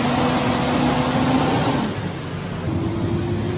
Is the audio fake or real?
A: real